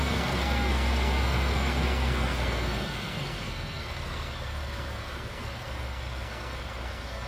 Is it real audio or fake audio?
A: fake